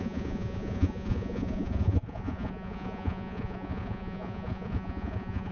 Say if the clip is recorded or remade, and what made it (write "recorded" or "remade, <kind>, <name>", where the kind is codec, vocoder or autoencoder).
remade, vocoder, Vocos